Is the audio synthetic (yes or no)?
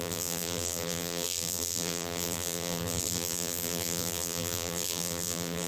yes